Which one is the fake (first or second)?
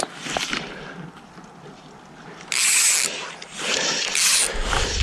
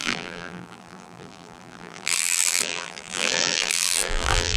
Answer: second